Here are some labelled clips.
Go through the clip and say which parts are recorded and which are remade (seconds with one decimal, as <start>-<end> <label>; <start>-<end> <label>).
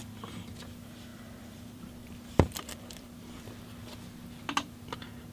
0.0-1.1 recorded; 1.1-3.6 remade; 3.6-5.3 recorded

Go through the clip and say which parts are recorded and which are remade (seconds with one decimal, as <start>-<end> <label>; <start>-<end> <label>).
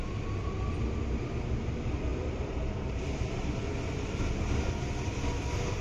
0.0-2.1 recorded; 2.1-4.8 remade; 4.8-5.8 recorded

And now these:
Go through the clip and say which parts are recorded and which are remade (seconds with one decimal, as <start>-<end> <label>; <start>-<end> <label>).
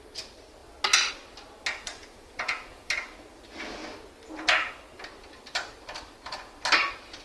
0.0-1.9 recorded; 1.9-2.9 remade; 2.9-7.2 recorded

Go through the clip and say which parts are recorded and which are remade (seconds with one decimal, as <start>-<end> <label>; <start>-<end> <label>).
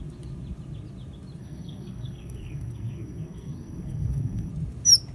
0.0-1.4 recorded; 1.4-4.5 remade; 4.5-5.1 recorded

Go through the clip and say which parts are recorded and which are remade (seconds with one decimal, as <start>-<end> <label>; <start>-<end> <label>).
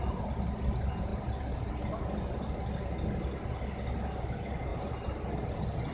0.0-1.1 recorded; 1.1-1.7 remade; 1.7-4.7 recorded; 4.7-5.5 remade; 5.5-5.9 recorded